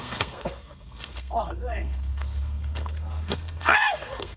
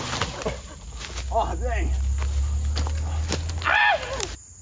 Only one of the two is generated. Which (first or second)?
first